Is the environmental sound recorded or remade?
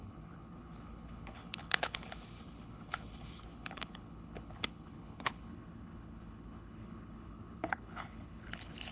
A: remade